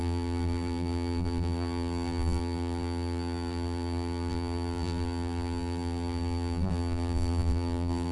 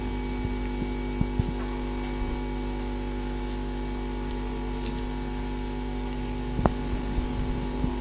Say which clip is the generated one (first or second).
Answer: first